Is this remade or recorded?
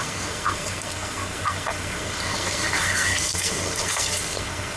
remade